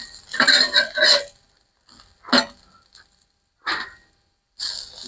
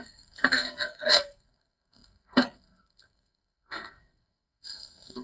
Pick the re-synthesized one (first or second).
second